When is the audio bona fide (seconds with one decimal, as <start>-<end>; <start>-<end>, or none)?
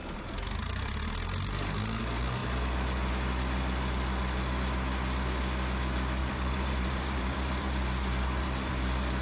0.0-6.2